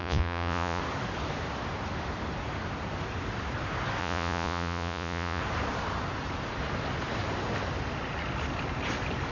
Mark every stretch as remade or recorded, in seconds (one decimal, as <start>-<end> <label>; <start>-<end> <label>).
0.0-0.8 remade; 0.8-4.0 recorded; 4.0-5.4 remade; 5.4-9.3 recorded